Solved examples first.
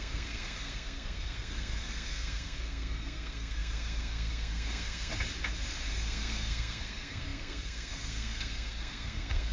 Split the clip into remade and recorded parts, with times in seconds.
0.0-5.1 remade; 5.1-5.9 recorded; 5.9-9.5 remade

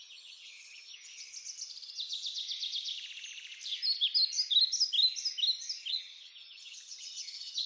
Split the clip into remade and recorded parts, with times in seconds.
0.0-1.3 remade; 1.3-5.9 recorded; 5.9-7.7 remade

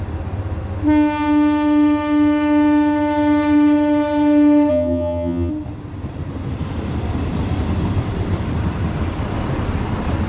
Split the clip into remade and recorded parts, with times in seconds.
0.0-4.7 recorded; 4.7-5.5 remade; 5.5-10.3 recorded

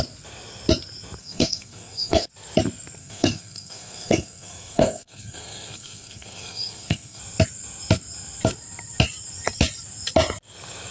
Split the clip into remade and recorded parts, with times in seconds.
0.0-1.2 recorded; 1.2-2.3 remade; 2.3-3.0 recorded; 3.0-7.2 remade; 7.2-10.9 recorded

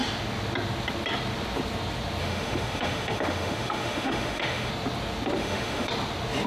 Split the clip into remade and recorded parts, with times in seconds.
0.0-2.2 recorded; 2.2-4.7 remade; 4.7-5.4 recorded; 5.4-5.9 remade; 5.9-6.5 recorded

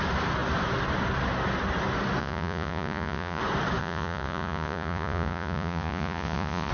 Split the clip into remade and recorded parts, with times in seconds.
0.0-2.2 recorded; 2.2-3.4 remade; 3.4-3.8 recorded; 3.8-6.7 remade

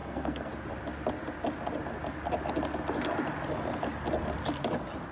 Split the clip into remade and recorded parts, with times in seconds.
0.0-0.5 remade; 0.5-5.1 recorded

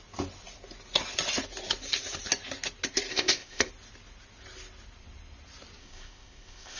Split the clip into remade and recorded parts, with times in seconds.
0.0-3.1 recorded; 3.1-3.7 remade; 3.7-5.8 recorded; 5.8-6.8 remade